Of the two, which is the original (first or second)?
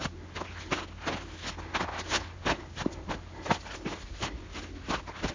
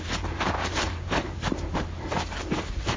first